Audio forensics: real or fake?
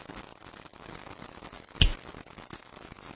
real